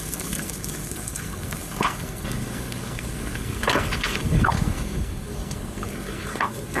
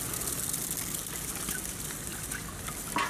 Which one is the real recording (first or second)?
second